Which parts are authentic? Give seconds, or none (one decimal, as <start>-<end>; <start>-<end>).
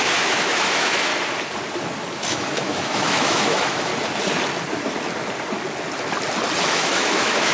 1.1-2.3; 3.9-6.6